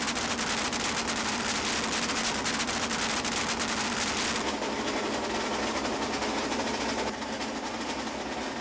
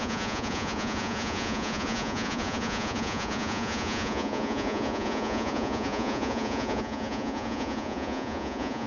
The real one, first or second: first